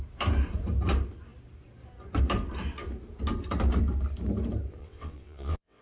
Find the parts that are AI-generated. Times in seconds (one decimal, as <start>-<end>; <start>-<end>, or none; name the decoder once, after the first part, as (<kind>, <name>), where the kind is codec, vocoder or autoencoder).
4.8-5.8 (vocoder, WaveNeXt)